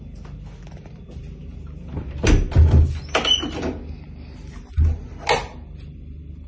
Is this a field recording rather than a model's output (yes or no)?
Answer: yes